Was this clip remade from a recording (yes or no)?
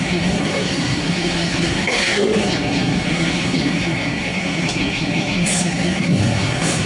yes